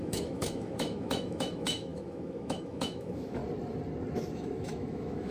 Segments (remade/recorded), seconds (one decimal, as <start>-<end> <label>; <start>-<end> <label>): 0.0-3.4 remade; 3.4-4.3 recorded; 4.3-5.3 remade